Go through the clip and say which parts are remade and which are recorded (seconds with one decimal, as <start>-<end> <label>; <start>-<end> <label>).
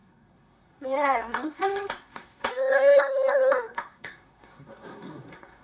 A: 0.0-5.6 remade